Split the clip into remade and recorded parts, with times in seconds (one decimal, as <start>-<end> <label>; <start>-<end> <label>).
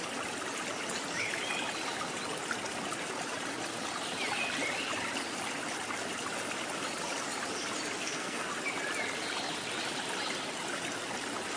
0.0-8.0 recorded; 8.0-8.5 remade; 8.5-11.6 recorded